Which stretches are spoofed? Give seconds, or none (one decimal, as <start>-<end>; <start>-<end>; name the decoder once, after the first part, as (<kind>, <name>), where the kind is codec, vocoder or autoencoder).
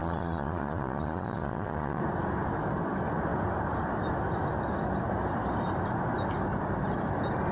0.0-2.0 (vocoder, Vocos)